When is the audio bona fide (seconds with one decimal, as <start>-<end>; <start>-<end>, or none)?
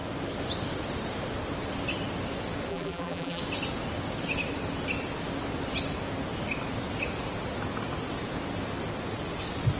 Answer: 0.0-2.7; 3.4-9.8